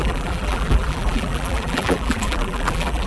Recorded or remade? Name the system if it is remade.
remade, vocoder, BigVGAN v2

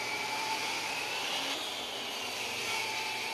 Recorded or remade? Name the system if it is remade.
remade, vocoder, BigVGAN v2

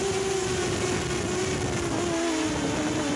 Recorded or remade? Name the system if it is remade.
recorded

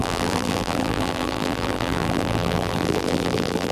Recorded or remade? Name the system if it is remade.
remade, vocoder, BigVGAN v2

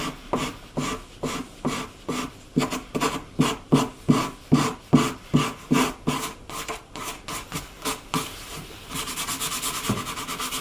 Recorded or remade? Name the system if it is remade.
recorded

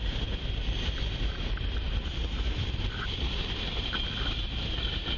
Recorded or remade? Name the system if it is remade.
remade, vocoder, BigVGAN v2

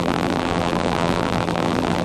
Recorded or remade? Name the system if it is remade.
remade, vocoder, BigVGAN v2